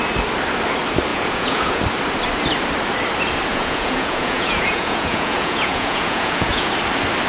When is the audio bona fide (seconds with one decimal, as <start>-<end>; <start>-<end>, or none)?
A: 0.0-1.1; 1.8-3.5; 6.7-7.3